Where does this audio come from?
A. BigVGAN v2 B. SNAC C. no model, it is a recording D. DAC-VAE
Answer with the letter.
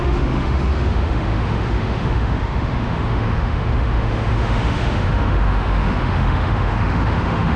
D